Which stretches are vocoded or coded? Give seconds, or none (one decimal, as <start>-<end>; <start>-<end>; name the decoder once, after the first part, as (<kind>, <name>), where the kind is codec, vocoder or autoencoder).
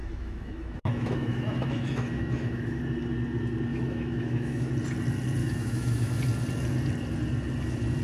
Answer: 0.0-2.8 (autoencoder, DAC-VAE); 3.7-4.7; 5.4-6.2